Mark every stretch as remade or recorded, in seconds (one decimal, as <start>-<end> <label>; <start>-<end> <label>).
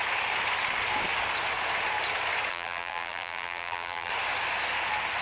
0.0-2.5 recorded; 2.5-4.1 remade; 4.1-5.2 recorded